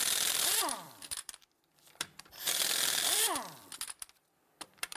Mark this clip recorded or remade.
remade